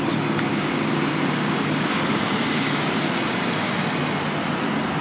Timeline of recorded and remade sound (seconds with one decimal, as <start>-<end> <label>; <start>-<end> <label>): 0.0-0.5 recorded; 0.5-2.9 remade; 2.9-5.0 recorded